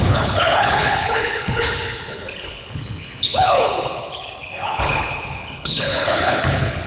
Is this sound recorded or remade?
remade